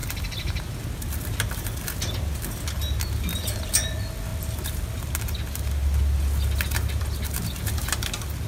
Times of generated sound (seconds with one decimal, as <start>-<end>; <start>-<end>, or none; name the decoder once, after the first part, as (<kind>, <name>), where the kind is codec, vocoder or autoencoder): 0.0-0.6 (vocoder, BigVGAN v2)

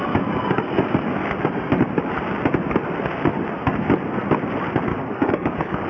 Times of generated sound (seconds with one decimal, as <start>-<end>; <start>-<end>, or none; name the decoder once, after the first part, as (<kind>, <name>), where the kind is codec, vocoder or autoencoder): 4.9-5.9 (codec, DAC)

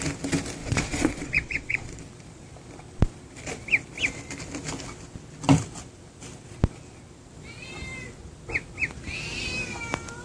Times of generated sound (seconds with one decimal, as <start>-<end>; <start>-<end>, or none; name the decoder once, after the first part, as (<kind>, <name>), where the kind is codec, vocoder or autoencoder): 0.6-2.0 (vocoder, Vocos)

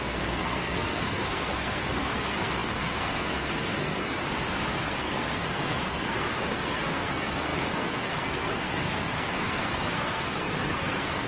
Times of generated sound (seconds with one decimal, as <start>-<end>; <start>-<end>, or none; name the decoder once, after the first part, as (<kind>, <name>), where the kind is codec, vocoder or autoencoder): 0.0-4.2 (codec, SNAC); 4.8-11.3

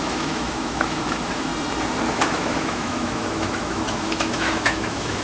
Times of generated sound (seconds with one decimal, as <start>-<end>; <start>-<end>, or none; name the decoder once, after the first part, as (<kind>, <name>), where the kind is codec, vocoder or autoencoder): 0.0-1.5 (autoencoder, DAC-VAE); 2.1-5.2

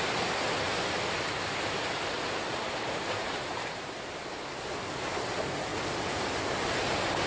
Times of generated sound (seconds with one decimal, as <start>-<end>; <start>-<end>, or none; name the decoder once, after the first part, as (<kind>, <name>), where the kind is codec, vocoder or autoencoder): 2.5-5.1 (vocoder, BigVGAN v2); 5.7-6.2

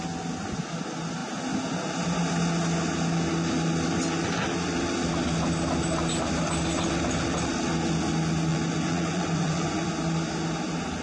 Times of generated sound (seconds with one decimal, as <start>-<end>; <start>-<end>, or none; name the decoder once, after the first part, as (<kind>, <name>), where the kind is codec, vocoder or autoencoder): 8.5-9.9 (vocoder, Vocos)